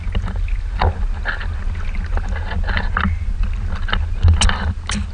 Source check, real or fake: real